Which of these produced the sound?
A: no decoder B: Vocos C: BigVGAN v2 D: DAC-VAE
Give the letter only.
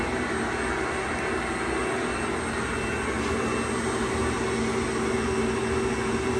A